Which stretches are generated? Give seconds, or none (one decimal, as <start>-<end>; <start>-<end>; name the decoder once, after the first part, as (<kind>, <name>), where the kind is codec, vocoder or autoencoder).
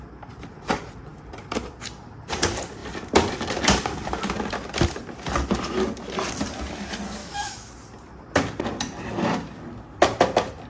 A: 7.2-7.7 (autoencoder, DAC-VAE)